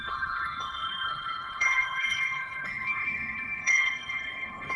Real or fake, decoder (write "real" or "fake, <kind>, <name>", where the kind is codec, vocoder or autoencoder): fake, codec, HILCodec